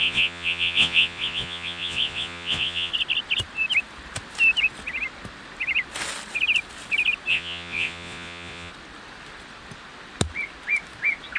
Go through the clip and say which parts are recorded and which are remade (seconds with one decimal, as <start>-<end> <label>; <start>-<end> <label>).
0.0-2.9 remade; 2.9-7.3 recorded; 7.3-8.7 remade; 8.7-11.4 recorded

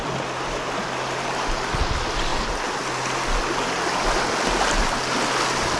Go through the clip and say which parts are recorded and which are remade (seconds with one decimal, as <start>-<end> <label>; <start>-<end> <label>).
0.0-5.8 recorded